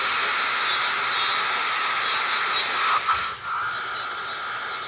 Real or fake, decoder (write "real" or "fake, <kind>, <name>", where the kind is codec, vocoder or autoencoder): real